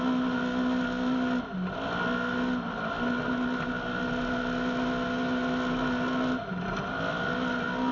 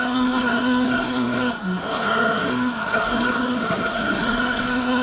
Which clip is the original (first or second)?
first